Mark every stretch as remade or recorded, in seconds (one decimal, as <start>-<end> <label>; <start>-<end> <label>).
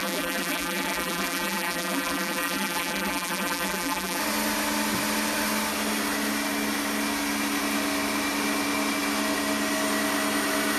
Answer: 0.0-4.2 remade; 4.2-10.8 recorded